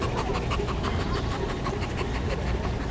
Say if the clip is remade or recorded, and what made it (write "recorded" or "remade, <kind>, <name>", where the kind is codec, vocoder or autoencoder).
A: recorded